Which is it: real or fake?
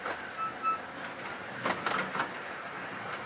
real